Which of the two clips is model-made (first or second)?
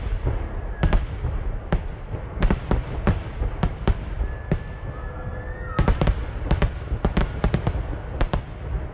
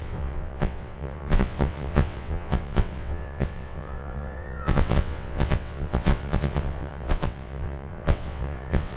second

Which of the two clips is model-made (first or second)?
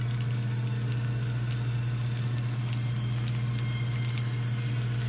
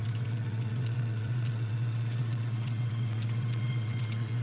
second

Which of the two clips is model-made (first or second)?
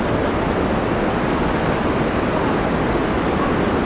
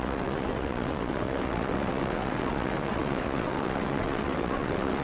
second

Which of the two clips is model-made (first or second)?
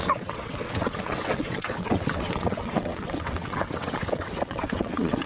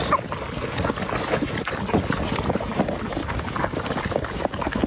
first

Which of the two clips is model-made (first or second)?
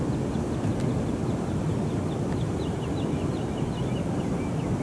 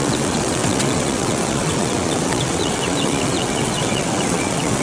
second